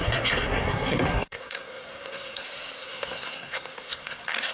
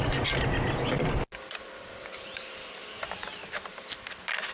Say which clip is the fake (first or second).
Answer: first